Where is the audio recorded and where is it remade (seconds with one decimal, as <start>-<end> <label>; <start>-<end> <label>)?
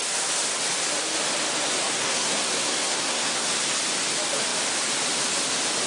0.0-1.8 recorded; 1.8-3.5 remade; 3.5-5.9 recorded